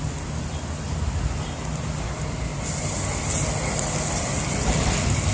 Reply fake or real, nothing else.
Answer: real